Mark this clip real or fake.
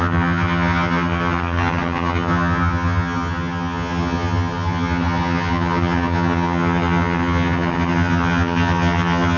fake